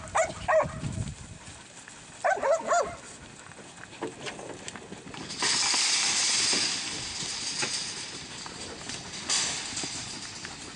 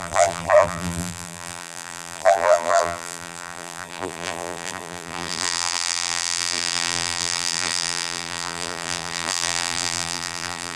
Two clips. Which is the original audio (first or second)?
first